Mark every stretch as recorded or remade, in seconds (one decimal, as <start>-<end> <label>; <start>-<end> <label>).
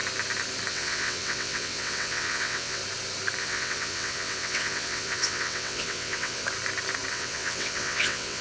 0.0-0.7 recorded; 0.7-2.8 remade; 2.8-3.4 recorded; 3.4-6.4 remade; 6.4-7.1 recorded; 7.1-8.4 remade